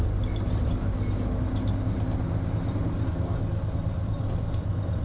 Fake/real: real